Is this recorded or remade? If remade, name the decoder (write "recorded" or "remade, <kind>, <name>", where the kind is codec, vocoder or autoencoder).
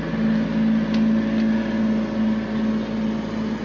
recorded